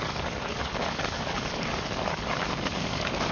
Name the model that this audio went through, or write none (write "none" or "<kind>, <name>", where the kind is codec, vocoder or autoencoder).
codec, DAC